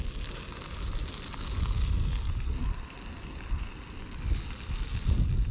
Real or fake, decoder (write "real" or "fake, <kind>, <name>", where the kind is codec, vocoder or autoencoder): real